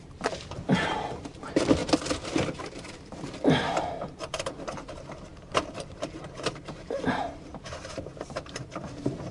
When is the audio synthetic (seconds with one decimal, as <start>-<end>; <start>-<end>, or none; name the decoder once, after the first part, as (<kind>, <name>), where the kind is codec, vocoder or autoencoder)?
0.0-1.8 (vocoder, BigVGAN v2); 2.6-9.3